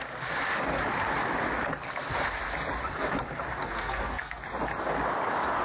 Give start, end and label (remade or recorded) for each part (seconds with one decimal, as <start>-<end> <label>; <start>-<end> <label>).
0.0-3.6 recorded; 3.6-4.4 remade; 4.4-5.6 recorded